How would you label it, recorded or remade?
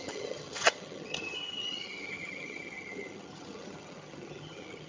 remade